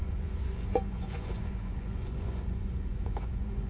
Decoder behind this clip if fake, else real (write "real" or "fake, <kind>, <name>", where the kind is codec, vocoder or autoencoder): fake, vocoder, Vocos